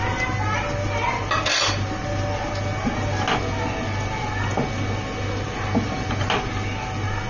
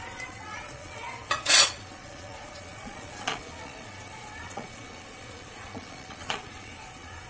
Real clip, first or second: first